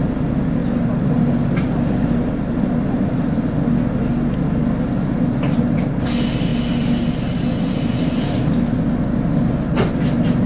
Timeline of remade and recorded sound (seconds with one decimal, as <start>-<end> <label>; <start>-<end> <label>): 0.0-10.5 recorded